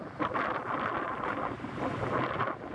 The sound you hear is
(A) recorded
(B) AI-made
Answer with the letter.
A